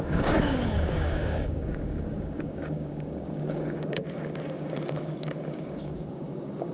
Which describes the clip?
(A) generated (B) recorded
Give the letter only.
A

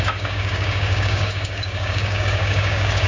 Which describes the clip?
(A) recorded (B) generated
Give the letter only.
B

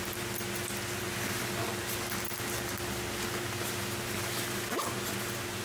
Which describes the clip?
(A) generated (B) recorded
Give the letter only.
B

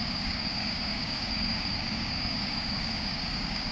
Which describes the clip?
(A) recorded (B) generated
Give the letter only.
B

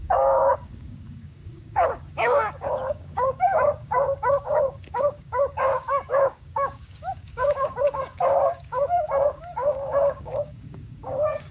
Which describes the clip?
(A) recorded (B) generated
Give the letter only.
B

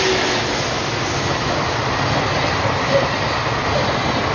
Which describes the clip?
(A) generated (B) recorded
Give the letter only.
B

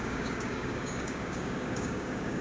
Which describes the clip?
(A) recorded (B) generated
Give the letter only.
B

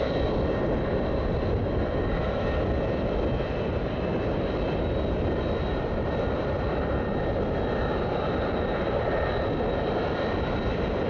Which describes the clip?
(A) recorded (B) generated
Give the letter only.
A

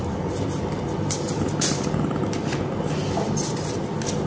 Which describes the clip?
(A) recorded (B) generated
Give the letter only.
A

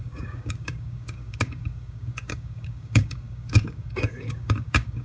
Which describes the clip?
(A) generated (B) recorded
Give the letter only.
A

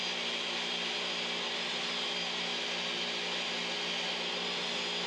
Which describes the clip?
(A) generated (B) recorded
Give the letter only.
B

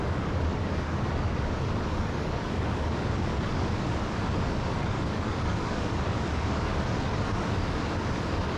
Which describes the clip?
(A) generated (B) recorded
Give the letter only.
A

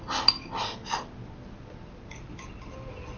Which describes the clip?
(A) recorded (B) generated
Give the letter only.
A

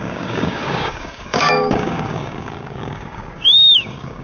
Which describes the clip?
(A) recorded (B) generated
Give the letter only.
B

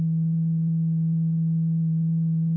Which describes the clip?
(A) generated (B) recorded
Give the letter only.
B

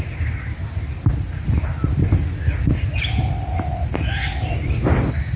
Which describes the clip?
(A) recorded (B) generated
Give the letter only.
A